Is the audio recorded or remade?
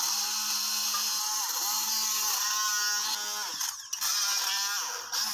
recorded